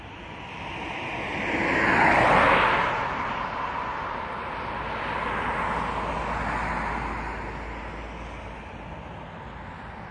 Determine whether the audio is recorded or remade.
recorded